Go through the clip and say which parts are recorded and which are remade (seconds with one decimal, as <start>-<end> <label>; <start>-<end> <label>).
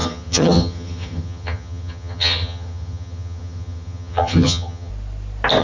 0.0-4.9 remade; 4.9-5.6 recorded